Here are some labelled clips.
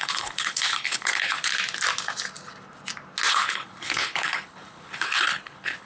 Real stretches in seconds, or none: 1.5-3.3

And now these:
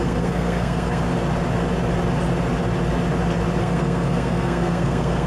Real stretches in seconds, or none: 1.0-3.6